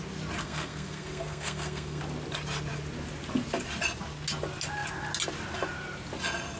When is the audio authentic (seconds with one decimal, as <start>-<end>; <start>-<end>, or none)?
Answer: 0.0-0.4; 2.0-6.6